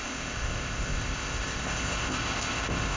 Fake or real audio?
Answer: fake